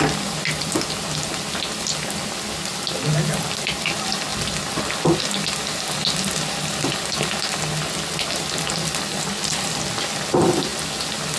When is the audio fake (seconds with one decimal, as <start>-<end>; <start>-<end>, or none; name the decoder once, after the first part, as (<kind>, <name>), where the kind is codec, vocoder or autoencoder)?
none